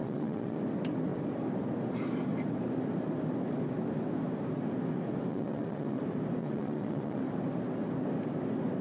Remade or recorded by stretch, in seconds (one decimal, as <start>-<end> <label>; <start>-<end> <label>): 0.0-0.6 remade; 0.6-5.3 recorded; 5.3-6.0 remade; 6.0-6.4 recorded; 6.4-7.2 remade; 7.2-8.8 recorded